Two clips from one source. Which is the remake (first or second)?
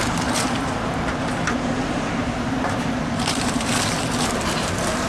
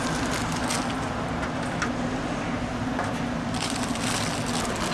first